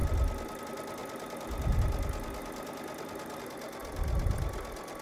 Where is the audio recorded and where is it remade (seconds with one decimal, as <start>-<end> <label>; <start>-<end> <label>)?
0.0-1.0 recorded; 1.0-1.8 remade; 1.8-3.8 recorded; 3.8-4.4 remade; 4.4-5.0 recorded